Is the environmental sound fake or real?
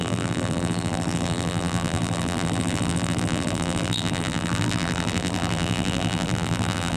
fake